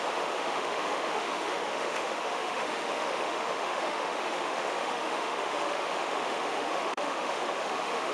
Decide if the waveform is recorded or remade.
remade